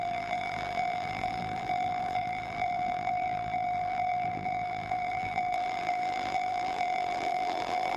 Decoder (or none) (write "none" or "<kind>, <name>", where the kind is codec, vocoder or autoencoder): vocoder, BigVGAN v2